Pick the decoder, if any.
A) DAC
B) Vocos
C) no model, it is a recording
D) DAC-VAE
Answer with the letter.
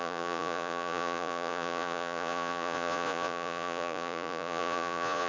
B